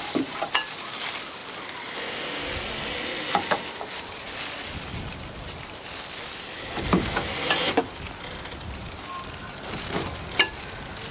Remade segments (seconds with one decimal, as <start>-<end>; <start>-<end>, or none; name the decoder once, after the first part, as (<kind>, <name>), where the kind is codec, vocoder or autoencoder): none